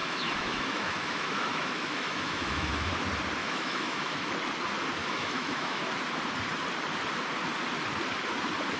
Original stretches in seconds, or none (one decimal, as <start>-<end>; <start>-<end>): 2.9-3.4; 4.3-5.0; 5.8-8.8